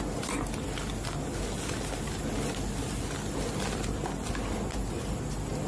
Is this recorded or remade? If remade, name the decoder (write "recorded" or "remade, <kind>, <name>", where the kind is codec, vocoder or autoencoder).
recorded